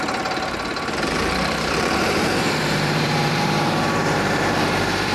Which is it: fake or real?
fake